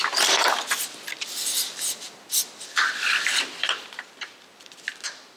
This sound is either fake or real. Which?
real